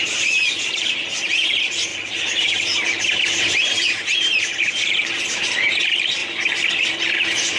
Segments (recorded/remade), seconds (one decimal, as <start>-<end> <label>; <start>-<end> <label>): 0.0-1.9 remade; 1.9-3.3 recorded; 3.3-6.2 remade; 6.2-6.8 recorded; 6.8-7.6 remade